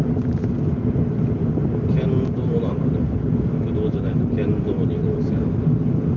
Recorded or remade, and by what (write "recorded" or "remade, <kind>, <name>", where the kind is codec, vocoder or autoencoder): recorded